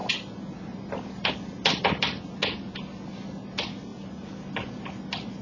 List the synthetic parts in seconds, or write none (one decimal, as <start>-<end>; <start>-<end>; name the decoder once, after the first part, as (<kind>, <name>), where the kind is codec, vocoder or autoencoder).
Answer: none